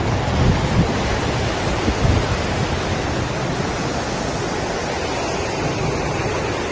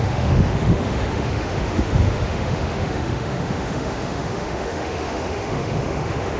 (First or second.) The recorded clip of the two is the first